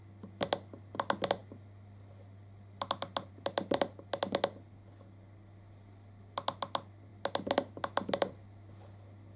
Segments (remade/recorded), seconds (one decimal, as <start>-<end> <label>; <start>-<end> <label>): 0.0-9.4 recorded